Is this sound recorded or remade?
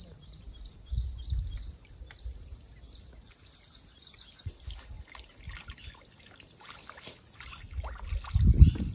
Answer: recorded